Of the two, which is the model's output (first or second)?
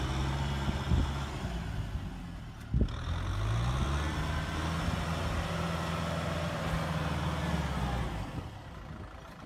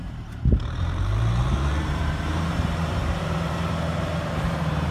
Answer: second